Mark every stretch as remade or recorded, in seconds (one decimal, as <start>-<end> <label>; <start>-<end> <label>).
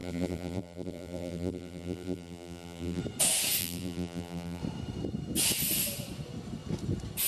0.0-3.0 remade; 3.0-3.6 recorded; 3.6-4.6 remade; 4.6-7.3 recorded